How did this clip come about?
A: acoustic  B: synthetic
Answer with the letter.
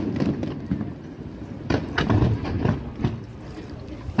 A